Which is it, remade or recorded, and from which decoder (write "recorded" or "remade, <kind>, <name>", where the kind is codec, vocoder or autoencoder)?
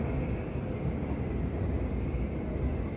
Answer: recorded